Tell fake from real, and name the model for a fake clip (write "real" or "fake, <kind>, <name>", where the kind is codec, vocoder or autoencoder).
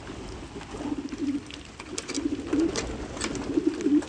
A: real